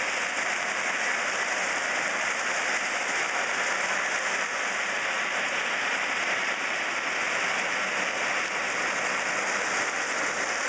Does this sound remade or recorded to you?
recorded